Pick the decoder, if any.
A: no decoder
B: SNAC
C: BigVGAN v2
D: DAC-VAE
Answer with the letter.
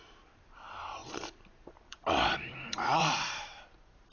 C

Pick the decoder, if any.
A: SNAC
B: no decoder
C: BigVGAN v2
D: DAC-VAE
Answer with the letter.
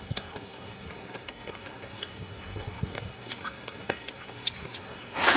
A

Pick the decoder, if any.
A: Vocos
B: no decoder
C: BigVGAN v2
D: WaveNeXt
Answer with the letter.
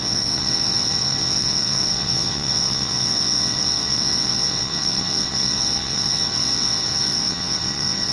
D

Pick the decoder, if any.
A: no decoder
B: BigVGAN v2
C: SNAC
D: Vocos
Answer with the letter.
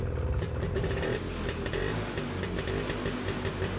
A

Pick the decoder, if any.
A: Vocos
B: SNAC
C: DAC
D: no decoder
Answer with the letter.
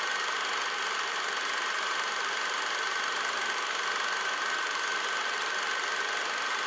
D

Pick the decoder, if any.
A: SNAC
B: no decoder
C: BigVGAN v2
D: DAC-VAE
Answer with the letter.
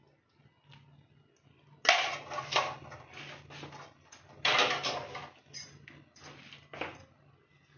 B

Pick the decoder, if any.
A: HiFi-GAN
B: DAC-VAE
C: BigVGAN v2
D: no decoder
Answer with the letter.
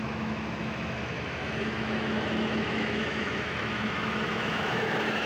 B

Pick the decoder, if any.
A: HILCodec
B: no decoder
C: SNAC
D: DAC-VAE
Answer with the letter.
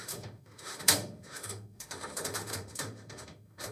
D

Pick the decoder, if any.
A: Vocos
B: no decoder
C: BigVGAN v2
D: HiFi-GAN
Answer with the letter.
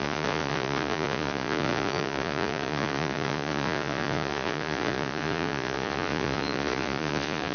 A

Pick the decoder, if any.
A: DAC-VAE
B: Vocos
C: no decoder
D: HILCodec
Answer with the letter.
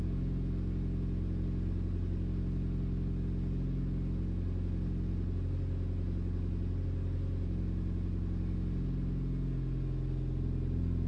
C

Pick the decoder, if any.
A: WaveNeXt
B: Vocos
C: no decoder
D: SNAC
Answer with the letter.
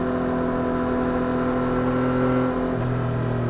C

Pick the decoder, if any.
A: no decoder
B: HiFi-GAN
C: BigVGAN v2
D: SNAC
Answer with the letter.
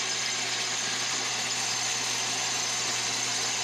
A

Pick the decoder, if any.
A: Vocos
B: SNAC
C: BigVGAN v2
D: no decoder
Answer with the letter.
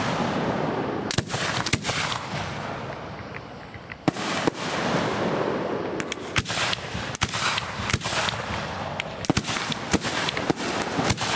D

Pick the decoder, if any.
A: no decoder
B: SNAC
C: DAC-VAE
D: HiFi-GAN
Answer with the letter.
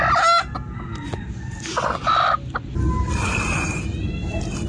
A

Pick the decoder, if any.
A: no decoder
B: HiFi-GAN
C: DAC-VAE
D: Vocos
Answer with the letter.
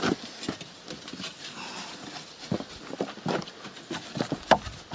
A